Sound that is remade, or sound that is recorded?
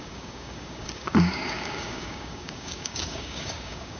remade